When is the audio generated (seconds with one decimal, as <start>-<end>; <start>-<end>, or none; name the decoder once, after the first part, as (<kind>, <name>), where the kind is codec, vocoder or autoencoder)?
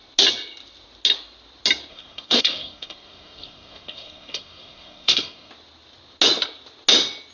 1.9-5.5 (codec, SNAC)